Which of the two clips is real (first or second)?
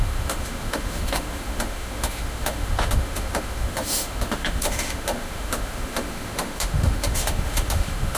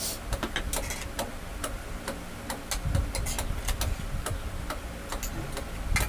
second